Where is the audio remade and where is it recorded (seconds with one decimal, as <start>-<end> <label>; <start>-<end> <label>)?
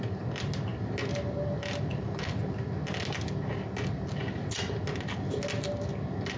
0.0-6.4 recorded